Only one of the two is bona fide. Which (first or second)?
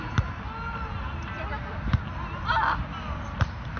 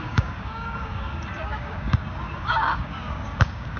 first